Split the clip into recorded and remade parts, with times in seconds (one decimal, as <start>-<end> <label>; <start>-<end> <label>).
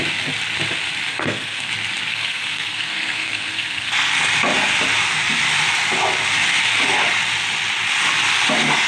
0.0-1.1 recorded; 1.1-1.7 remade; 1.7-2.1 recorded; 2.1-4.2 remade; 4.2-8.9 recorded